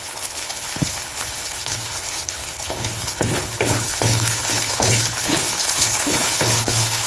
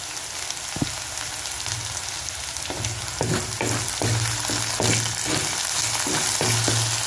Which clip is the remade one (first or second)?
first